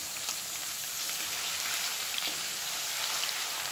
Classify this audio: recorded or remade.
remade